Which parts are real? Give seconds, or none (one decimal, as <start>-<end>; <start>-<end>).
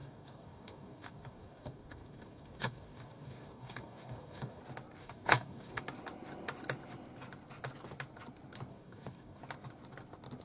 4.6-5.0; 5.8-8.7; 9.4-10.4